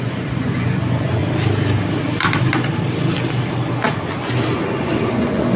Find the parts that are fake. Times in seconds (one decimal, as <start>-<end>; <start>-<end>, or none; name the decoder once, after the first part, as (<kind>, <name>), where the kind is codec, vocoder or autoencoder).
0.0-1.2 (vocoder, Vocos); 4.6-5.6